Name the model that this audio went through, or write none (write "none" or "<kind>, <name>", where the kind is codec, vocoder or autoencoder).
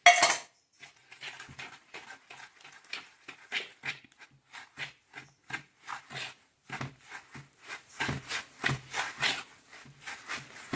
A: none